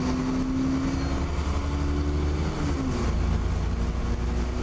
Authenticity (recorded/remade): recorded